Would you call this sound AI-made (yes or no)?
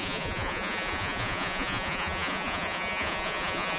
yes